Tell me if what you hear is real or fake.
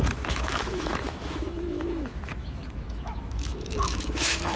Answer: fake